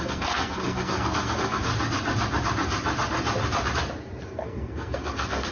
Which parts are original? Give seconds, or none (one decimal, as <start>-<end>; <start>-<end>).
1.7-4.2